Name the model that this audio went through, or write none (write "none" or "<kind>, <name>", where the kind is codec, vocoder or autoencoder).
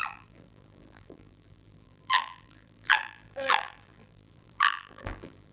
vocoder, BigVGAN v2